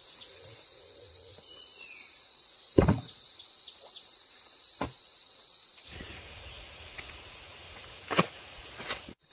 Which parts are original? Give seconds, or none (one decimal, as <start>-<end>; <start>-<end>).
none